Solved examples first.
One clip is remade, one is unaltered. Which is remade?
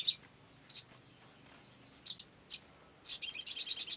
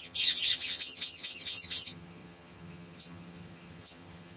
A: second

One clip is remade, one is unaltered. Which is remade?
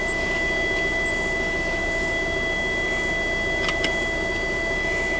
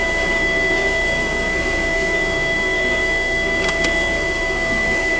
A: second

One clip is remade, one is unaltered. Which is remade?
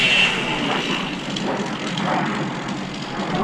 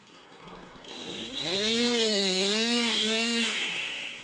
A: second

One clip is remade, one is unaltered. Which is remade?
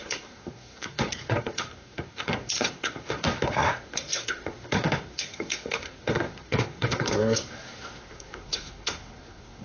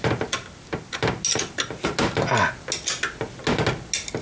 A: first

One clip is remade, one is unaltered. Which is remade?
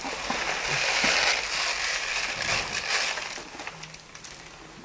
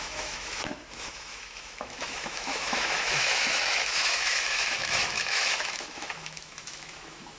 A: second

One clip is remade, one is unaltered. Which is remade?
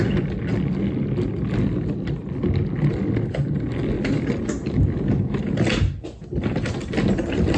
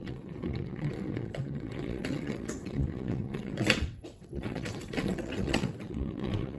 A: second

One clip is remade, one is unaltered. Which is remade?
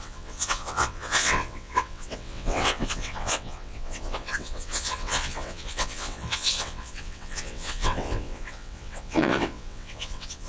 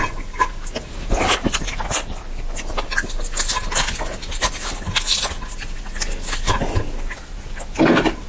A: first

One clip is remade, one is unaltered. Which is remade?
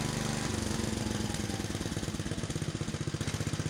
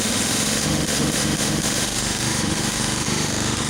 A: second